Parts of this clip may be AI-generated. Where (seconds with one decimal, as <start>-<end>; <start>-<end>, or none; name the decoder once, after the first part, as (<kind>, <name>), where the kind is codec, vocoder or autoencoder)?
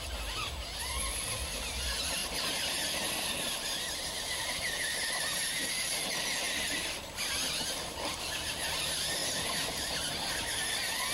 none